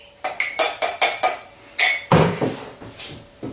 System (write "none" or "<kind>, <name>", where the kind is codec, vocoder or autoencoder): none